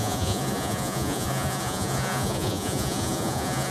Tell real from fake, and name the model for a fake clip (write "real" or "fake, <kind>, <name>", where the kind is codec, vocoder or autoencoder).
fake, vocoder, Vocos